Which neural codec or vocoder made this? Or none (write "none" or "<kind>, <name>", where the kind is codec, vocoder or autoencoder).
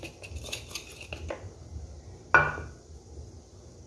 none